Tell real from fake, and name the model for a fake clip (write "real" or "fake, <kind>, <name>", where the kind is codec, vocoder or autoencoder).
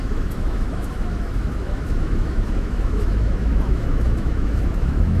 fake, autoencoder, DAC-VAE